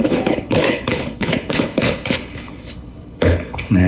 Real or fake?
fake